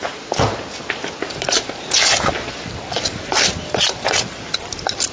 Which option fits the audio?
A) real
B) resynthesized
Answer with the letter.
A